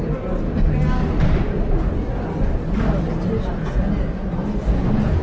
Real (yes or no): yes